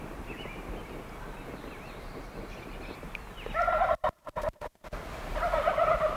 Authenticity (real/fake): fake